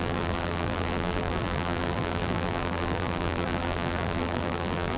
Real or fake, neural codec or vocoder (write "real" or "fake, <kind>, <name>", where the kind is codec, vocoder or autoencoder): fake, vocoder, BigVGAN v2